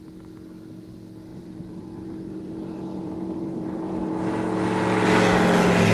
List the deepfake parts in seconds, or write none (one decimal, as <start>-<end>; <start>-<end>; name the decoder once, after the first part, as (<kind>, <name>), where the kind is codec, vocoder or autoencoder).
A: 1.3-4.1 (vocoder, BigVGAN v2)